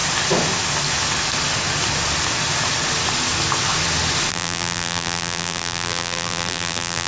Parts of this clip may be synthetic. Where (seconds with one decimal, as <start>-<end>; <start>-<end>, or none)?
4.3-7.1